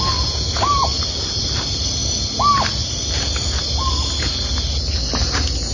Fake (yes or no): no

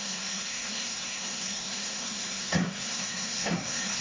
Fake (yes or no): yes